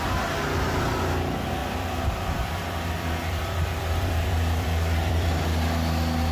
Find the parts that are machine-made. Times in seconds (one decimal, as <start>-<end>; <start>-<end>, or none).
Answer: 1.6-5.4